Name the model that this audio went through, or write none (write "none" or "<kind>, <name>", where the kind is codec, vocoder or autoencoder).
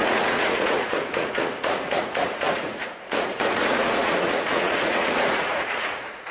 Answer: vocoder, Vocos